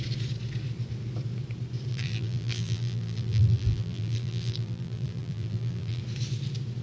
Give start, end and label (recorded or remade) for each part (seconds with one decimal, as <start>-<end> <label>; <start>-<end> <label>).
0.0-1.9 recorded; 1.9-6.0 remade; 6.0-6.8 recorded